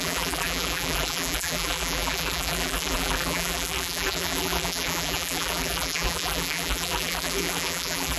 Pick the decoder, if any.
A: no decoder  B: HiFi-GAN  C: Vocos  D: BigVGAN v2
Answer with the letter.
D